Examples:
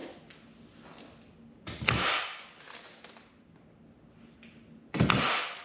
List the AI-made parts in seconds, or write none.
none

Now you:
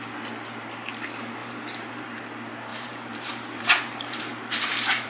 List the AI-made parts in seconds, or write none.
1.4-2.2 (vocoder, BigVGAN v2); 2.7-5.1